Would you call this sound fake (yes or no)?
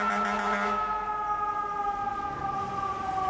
no